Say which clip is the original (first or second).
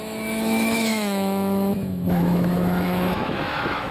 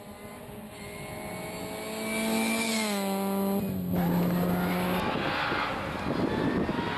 second